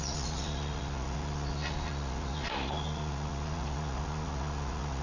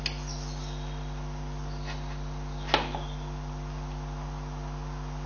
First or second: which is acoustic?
second